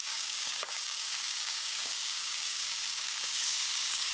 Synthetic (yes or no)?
yes